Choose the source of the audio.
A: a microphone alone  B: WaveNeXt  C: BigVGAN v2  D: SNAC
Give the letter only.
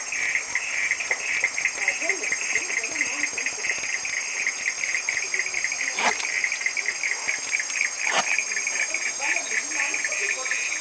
A